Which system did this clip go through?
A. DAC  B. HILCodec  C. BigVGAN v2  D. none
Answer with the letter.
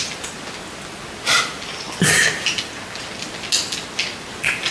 D